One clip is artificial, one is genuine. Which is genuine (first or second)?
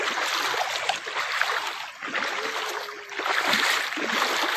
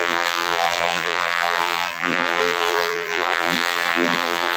first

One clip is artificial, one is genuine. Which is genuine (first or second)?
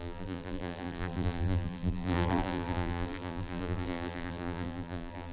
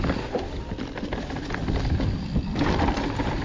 second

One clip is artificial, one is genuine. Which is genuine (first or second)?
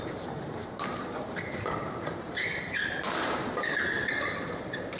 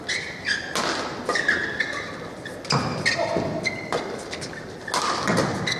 second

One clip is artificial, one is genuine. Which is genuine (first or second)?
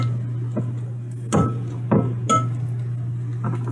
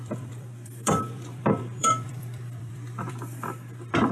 first